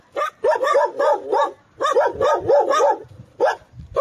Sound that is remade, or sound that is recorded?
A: recorded